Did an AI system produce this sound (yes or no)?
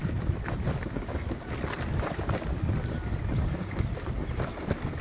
no